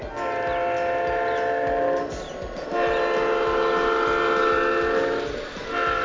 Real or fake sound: real